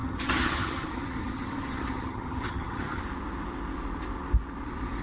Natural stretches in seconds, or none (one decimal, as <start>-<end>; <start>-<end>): 3.0-5.0